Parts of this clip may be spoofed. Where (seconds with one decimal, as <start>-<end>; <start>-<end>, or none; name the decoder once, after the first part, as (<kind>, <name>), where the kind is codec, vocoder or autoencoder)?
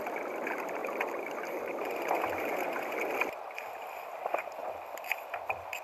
0.8-2.6 (vocoder, BigVGAN v2); 4.6-5.8